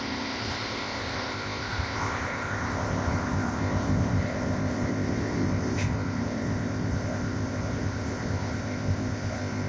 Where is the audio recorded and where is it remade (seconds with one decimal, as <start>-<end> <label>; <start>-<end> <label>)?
0.0-9.7 remade